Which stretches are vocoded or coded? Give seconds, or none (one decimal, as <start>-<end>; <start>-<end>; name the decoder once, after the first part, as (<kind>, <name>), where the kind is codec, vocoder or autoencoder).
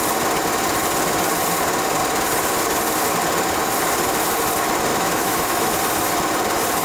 4.9-5.7 (autoencoder, DAC-VAE)